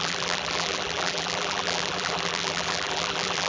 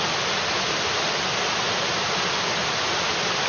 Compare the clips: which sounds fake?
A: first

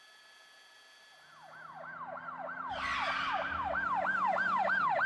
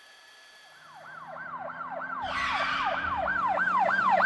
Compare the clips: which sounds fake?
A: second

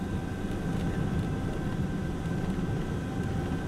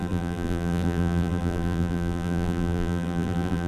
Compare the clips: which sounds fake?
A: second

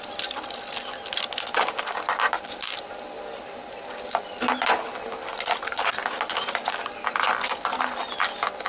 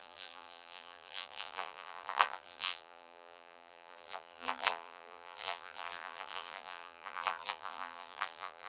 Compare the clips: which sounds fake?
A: second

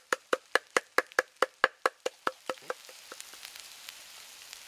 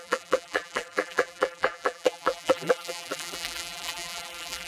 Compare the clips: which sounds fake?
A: second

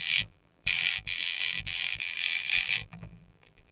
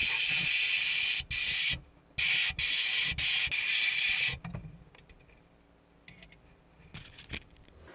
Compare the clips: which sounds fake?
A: first